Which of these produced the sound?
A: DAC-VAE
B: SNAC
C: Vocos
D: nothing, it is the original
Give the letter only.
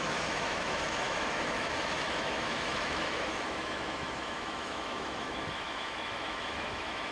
A